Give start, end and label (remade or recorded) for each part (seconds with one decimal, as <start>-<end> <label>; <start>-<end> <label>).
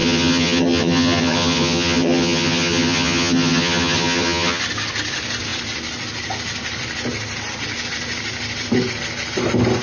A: 0.0-4.6 remade; 4.6-9.8 recorded